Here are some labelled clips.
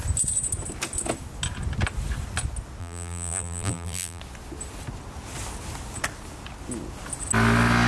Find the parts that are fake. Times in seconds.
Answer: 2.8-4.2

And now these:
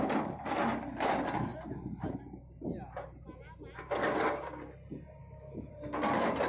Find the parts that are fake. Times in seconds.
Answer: 5.2-5.7

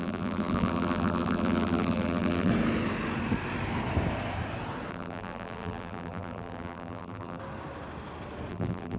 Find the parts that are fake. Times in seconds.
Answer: 0.0-2.5; 4.9-7.4; 8.5-9.0